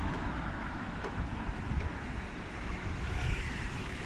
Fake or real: fake